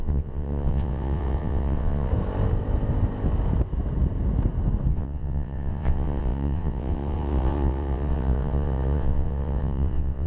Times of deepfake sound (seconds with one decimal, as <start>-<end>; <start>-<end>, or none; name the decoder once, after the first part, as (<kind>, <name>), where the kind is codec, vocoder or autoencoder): 0.0-2.1 (vocoder, WaveNeXt); 4.9-10.3